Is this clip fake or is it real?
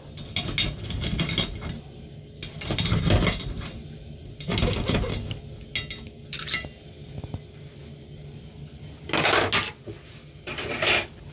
real